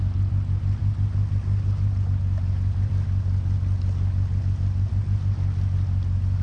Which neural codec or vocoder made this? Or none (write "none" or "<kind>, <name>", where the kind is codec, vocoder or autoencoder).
none